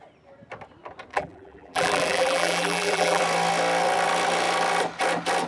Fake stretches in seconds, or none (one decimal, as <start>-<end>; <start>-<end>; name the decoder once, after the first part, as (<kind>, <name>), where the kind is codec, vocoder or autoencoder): 1.1-3.2 (vocoder, BigVGAN v2)